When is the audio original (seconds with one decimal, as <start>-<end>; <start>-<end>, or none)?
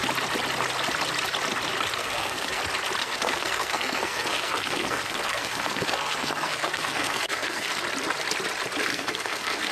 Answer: 0.0-2.0; 2.6-3.0; 7.8-8.9